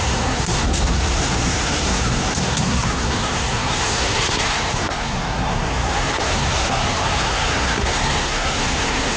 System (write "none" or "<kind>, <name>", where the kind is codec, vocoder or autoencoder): codec, SNAC